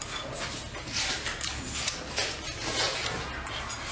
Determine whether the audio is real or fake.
real